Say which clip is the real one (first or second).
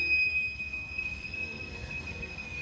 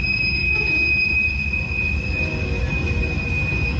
second